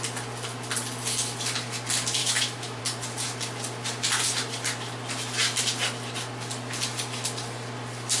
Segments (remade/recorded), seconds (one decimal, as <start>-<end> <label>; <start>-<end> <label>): 0.0-2.2 recorded; 2.2-2.8 remade; 2.8-8.2 recorded